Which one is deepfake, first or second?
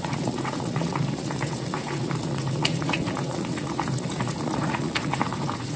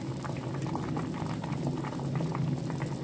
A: first